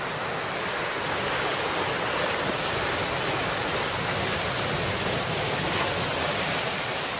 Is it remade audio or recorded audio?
recorded